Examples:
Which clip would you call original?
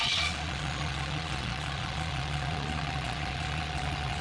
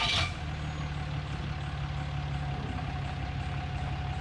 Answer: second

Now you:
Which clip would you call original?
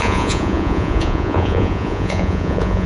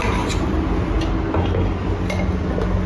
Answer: second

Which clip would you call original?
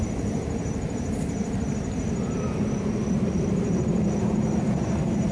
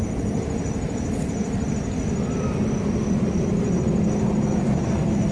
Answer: second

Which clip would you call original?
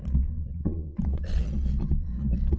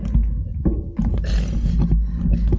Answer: second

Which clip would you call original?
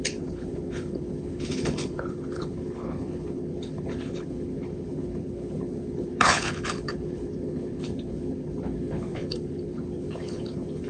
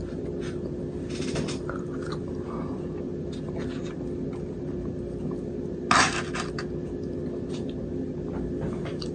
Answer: second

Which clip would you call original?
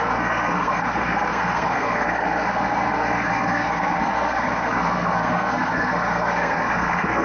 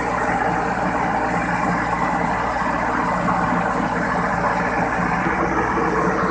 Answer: second